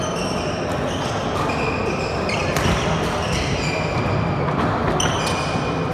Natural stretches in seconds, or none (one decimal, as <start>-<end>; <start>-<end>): 0.0-1.2; 4.7-5.9